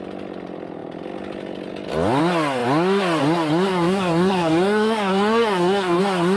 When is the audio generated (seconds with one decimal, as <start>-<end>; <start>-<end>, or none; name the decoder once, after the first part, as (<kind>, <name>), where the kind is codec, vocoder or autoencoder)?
3.7-6.0 (codec, SNAC)